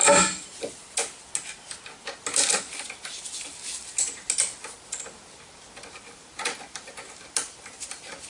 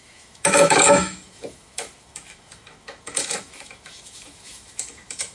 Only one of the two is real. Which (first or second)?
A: first